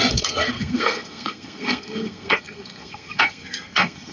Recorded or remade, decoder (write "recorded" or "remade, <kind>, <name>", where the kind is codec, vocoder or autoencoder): remade, codec, SNAC